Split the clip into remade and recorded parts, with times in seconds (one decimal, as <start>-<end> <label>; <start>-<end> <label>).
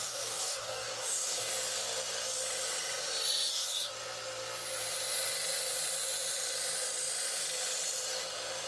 0.0-1.5 remade; 1.5-3.5 recorded; 3.5-3.9 remade; 3.9-8.7 recorded